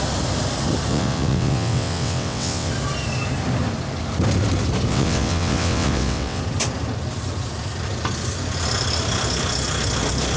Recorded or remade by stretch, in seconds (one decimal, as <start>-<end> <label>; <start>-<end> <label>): 0.0-0.9 recorded; 0.9-2.7 remade; 2.7-4.9 recorded; 4.9-6.4 remade; 6.4-10.4 recorded